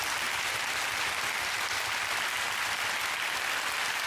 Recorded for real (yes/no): yes